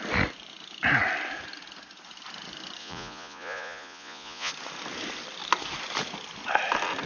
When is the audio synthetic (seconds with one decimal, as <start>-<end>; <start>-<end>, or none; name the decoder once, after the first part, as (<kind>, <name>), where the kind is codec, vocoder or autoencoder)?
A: 2.8-4.5 (vocoder, Vocos)